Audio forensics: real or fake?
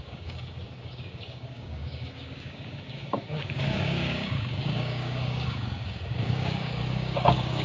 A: fake